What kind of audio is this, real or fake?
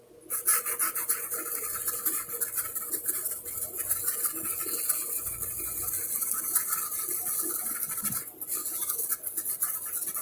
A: real